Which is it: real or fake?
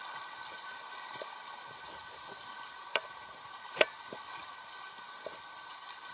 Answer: real